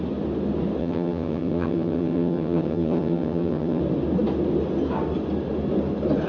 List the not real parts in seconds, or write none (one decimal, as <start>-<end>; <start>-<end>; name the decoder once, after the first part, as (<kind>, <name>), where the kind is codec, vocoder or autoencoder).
0.8-3.8 (vocoder, HiFi-GAN)